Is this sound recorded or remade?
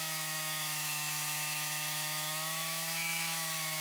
remade